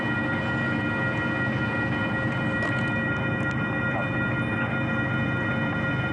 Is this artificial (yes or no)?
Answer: no